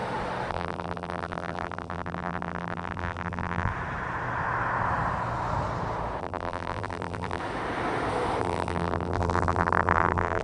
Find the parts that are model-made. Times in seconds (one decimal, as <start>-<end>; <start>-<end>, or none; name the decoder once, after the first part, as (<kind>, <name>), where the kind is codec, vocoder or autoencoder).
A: 0.5-3.7 (vocoder, BigVGAN v2); 6.2-7.4; 8.4-10.4